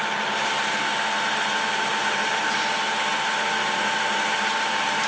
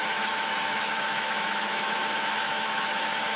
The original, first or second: first